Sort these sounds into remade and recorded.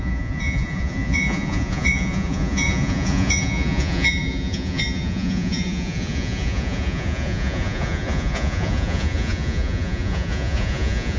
remade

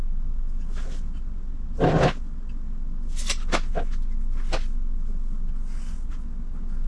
recorded